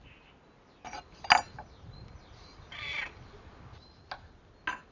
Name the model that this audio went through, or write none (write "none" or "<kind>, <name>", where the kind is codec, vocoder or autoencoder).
none